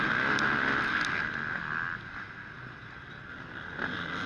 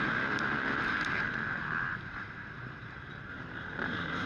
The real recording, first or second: first